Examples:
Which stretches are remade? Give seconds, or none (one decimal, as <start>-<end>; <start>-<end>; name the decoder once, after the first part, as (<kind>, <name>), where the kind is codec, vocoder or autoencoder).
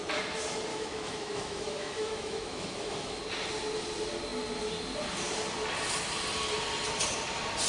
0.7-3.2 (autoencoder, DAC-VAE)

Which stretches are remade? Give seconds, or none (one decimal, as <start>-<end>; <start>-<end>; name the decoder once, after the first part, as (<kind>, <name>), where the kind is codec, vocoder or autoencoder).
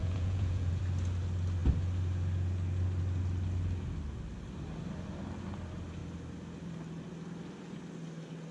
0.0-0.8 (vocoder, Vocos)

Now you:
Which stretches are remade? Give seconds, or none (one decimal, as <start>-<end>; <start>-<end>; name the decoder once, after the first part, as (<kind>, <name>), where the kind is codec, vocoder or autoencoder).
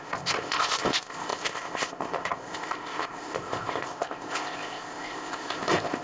0.0-6.0 (codec, ZipCodec)